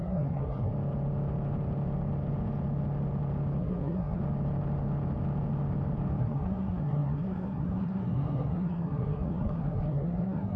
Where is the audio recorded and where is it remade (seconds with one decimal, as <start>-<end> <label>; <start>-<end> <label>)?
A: 0.0-0.7 remade; 0.7-3.6 recorded; 3.6-4.2 remade; 4.2-6.2 recorded; 6.2-10.6 remade